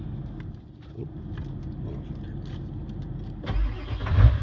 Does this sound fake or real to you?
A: real